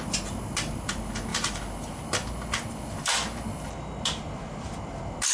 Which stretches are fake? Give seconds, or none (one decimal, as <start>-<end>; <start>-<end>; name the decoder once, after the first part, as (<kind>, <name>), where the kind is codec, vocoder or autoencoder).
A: none